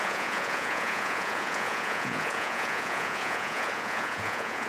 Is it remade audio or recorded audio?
remade